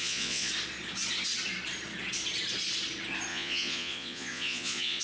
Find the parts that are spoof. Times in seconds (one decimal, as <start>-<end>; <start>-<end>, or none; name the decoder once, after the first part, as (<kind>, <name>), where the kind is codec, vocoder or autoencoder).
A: 0.0-0.5 (vocoder, Vocos); 3.3-5.0